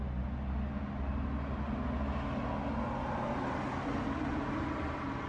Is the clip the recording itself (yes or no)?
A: yes